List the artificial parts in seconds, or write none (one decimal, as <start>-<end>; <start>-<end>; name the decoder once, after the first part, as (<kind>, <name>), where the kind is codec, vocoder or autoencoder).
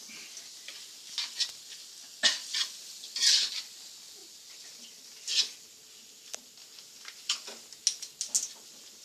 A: none